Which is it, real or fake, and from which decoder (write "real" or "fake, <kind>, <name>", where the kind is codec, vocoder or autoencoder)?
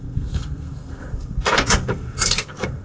fake, codec, SNAC